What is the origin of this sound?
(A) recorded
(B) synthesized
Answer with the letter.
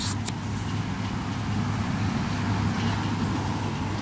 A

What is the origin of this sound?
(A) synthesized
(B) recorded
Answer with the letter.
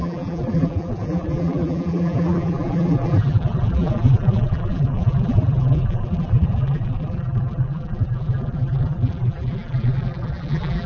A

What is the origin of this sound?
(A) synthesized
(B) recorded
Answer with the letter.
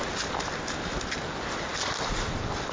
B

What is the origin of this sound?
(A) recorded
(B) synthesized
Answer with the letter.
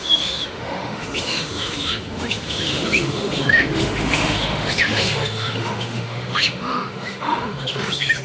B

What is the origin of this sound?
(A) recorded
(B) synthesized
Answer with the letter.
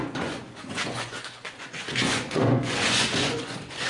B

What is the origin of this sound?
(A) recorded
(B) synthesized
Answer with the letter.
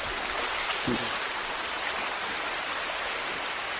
A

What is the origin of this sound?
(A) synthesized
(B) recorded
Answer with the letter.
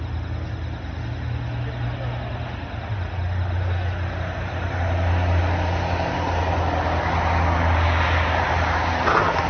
B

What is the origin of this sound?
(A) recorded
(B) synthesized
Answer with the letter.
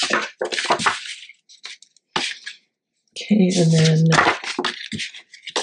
A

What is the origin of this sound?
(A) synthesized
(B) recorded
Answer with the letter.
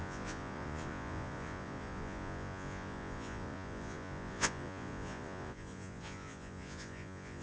A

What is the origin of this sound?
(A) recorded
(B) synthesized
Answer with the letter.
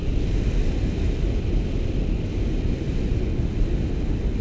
A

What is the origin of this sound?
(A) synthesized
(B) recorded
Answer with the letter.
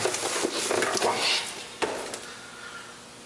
B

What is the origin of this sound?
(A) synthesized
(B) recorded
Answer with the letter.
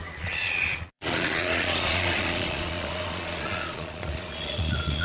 A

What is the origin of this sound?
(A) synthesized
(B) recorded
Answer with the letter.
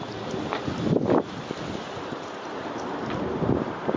B